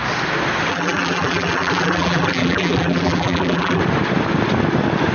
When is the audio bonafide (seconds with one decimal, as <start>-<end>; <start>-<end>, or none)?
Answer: 0.0-0.7; 3.8-5.1